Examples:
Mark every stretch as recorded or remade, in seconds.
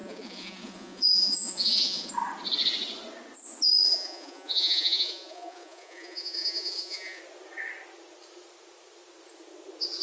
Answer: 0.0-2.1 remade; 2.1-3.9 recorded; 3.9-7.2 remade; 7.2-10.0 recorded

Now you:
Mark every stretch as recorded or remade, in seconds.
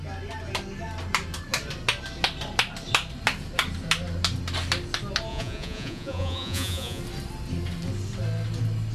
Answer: 0.0-5.3 recorded; 5.3-7.0 remade; 7.0-8.9 recorded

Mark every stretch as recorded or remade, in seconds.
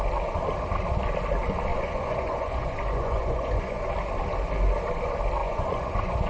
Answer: 0.0-1.7 recorded; 1.7-3.8 remade; 3.8-5.4 recorded; 5.4-6.3 remade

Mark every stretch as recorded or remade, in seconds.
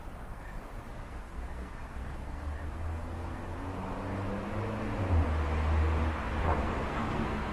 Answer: 0.0-3.4 remade; 3.4-6.4 recorded; 6.4-7.5 remade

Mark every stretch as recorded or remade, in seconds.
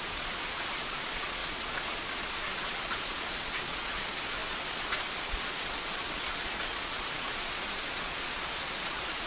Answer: 0.0-9.3 remade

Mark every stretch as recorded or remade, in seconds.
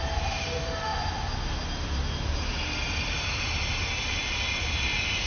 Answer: 0.0-5.3 recorded